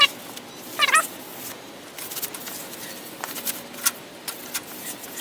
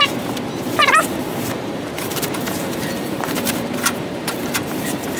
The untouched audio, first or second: first